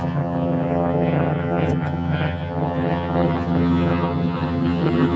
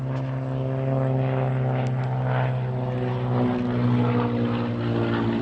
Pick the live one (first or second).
second